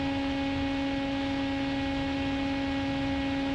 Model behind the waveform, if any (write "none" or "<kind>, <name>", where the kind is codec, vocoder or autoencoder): none